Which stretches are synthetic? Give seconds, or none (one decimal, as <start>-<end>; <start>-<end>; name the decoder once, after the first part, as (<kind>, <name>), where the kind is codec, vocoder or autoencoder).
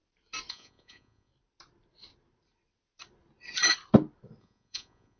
0.5-1.3 (vocoder, Vocos); 4.4-5.2